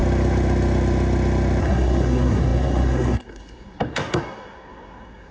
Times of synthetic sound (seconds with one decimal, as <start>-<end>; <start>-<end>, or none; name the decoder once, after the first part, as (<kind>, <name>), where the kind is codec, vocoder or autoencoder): 1.6-5.3 (codec, SNAC)